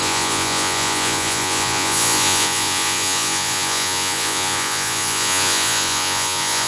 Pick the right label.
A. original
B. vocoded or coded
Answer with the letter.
B